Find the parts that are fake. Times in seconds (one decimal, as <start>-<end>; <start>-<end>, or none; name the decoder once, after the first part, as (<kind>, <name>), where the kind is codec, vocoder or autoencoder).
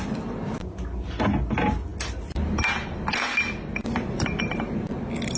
none